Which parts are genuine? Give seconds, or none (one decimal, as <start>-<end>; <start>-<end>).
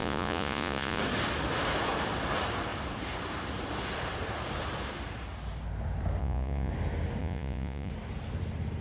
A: 1.0-6.2; 6.7-7.2; 7.9-8.8